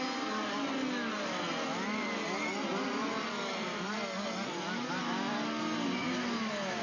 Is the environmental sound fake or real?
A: real